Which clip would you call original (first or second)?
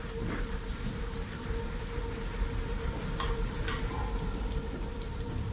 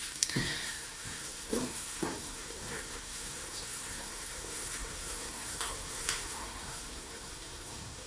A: first